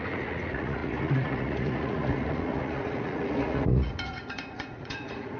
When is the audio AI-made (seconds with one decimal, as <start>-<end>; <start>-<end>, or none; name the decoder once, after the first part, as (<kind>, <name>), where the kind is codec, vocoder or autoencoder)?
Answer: 0.0-5.4 (vocoder, Vocos)

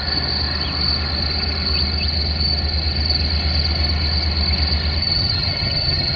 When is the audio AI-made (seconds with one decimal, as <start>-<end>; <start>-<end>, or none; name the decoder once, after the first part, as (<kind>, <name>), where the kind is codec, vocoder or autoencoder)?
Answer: 5.0-6.2 (vocoder, HiFi-GAN)

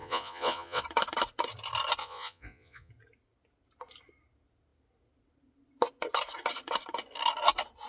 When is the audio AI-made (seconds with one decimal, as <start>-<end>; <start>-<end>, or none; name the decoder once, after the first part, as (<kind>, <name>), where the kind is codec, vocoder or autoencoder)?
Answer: 0.0-0.8 (vocoder, Vocos); 2.0-2.9

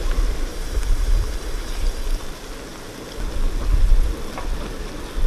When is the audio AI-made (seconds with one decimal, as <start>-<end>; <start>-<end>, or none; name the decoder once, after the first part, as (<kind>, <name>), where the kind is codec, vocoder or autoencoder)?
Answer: 0.5-2.2 (vocoder, BigVGAN v2)

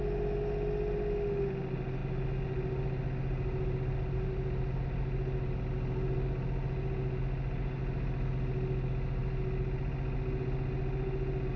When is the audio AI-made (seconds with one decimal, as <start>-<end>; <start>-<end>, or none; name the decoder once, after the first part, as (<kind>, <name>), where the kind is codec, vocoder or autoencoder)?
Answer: none